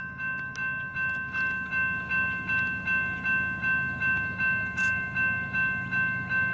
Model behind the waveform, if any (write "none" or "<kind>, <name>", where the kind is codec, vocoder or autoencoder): none